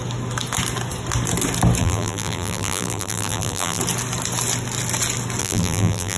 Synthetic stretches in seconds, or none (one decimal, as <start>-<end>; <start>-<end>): 1.8-3.8; 5.4-6.2